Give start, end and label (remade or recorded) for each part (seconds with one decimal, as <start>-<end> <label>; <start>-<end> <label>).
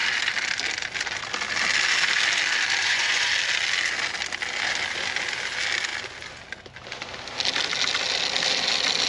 0.0-2.8 recorded; 2.8-3.3 remade; 3.3-9.1 recorded